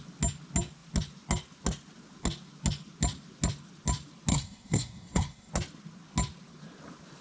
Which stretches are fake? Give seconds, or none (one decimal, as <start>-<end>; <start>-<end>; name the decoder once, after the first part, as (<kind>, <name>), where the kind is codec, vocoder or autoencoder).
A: 4.3-5.5 (codec, SNAC)